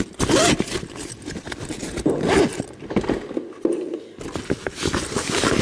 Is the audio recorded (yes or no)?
yes